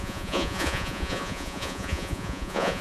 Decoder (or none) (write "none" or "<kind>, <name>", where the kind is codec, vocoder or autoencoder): vocoder, Vocos